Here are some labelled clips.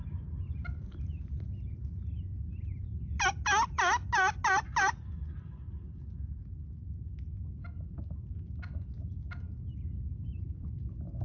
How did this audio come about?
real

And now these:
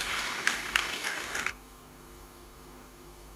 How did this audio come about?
fake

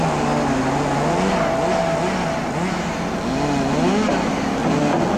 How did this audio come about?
real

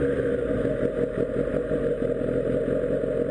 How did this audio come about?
real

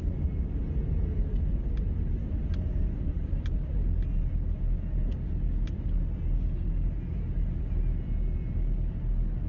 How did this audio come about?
real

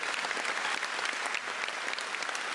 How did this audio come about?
real